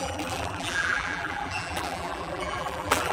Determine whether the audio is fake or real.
fake